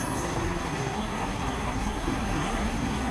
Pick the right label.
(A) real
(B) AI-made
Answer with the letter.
B